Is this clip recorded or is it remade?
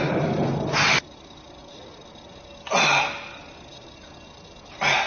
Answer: recorded